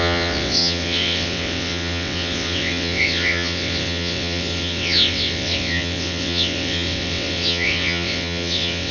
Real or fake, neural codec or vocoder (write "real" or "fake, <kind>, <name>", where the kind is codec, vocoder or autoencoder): fake, vocoder, WaveNeXt